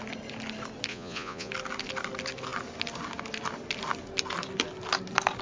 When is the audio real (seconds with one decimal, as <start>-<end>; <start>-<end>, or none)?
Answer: 0.0-0.9; 1.5-5.4